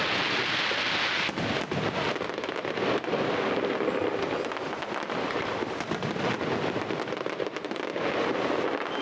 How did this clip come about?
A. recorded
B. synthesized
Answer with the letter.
A